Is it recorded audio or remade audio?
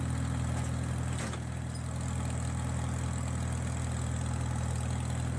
recorded